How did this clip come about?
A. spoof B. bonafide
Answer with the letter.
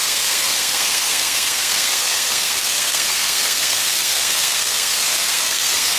A